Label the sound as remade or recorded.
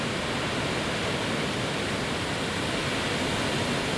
recorded